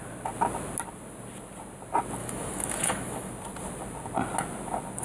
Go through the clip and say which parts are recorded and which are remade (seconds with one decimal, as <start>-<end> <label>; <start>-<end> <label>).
0.0-2.2 recorded; 2.2-3.3 remade; 3.3-5.0 recorded